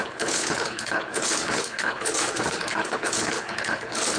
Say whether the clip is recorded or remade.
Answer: remade